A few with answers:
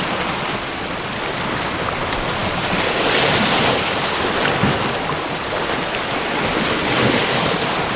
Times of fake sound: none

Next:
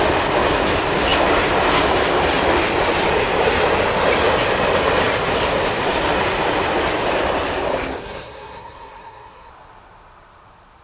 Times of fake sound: 8.0-9.5 (codec, SNAC)